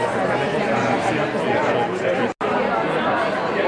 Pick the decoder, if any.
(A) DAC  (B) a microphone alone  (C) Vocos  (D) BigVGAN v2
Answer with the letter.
B